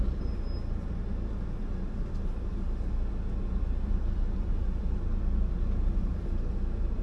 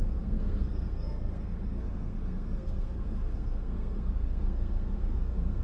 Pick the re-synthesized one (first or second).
second